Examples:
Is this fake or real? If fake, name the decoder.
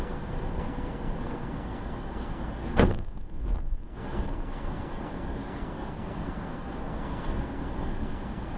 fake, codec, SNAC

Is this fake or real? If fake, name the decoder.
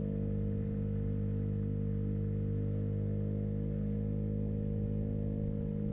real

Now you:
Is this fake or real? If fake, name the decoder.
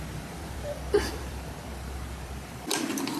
fake, vocoder, BigVGAN v2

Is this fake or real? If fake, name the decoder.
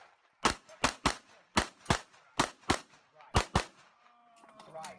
real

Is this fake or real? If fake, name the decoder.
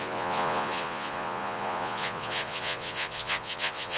fake, vocoder, Vocos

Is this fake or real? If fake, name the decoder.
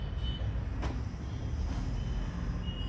real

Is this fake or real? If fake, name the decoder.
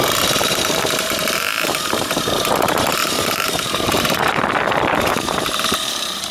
fake, vocoder, BigVGAN v2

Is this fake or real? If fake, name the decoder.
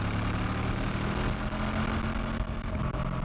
real